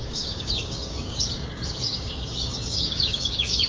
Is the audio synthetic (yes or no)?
yes